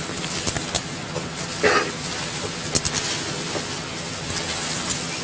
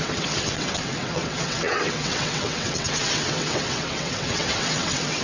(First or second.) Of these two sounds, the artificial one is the second